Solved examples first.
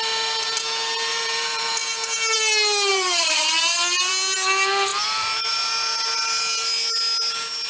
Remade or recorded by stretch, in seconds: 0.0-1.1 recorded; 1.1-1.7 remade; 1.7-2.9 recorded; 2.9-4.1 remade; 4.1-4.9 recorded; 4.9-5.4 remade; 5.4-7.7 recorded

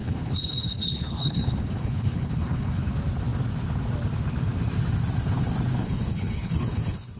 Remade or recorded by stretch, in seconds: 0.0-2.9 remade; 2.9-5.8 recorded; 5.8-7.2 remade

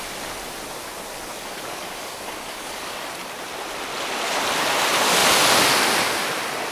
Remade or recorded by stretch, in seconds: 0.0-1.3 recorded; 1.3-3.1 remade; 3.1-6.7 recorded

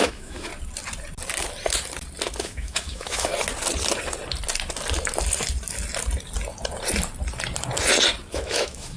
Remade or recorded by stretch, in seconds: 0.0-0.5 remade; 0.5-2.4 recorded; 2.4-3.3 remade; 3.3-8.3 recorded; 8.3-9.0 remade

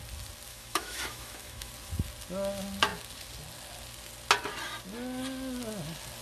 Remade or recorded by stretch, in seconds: 0.0-0.5 recorded; 0.5-1.7 remade; 1.7-6.2 recorded